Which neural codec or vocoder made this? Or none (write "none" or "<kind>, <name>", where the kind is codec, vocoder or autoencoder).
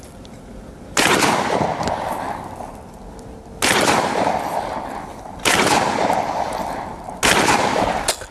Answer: none